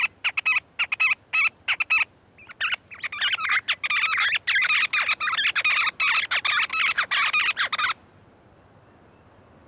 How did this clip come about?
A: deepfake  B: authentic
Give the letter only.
B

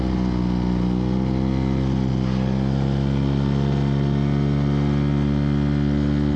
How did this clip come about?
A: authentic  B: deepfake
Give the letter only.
A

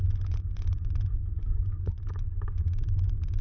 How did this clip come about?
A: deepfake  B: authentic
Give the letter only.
A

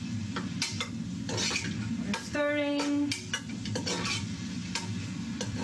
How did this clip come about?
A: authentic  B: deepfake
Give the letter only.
A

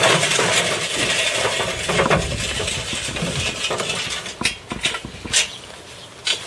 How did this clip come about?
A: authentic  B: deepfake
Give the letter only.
A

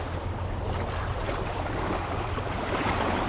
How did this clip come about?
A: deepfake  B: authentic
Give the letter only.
B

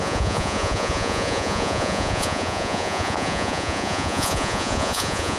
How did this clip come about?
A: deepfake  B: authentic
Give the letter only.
A